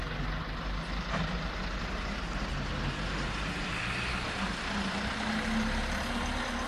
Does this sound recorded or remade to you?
recorded